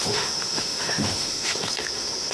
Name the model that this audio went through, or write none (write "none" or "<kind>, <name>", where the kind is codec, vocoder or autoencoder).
autoencoder, DAC-VAE